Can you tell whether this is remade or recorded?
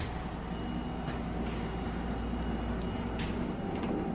recorded